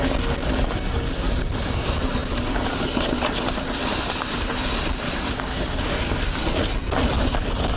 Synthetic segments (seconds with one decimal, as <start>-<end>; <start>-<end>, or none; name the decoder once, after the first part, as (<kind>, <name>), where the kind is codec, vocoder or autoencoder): none